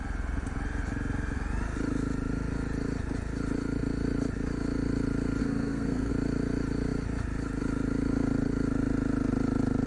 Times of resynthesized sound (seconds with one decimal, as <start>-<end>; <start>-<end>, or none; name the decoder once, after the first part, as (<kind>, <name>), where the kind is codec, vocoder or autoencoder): 5.4-6.1 (codec, SNAC)